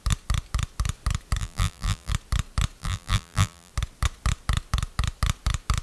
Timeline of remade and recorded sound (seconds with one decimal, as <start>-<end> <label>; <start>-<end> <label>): 0.0-1.4 recorded; 1.4-2.1 remade; 2.1-2.8 recorded; 2.8-3.7 remade; 3.7-5.8 recorded